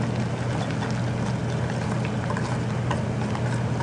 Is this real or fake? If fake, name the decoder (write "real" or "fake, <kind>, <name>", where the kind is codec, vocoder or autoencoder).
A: real